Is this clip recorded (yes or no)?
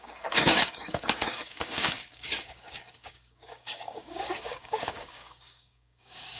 no